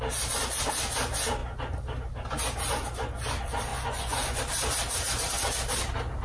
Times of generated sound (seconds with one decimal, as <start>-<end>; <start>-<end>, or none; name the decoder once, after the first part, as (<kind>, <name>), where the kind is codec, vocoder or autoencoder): 3.7-4.4 (vocoder, Vocos)